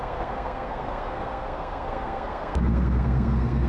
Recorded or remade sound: remade